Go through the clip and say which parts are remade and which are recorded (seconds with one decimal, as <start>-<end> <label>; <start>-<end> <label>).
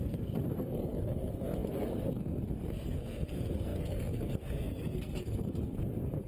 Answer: 0.0-6.3 remade